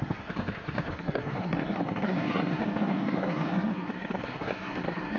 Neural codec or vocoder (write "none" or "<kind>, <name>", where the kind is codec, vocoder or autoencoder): codec, SNAC